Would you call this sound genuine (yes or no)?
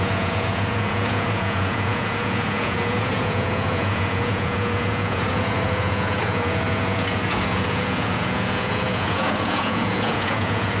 no